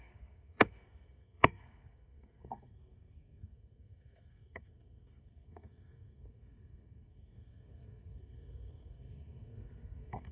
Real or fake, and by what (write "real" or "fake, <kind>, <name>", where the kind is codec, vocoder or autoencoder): fake, codec, SNAC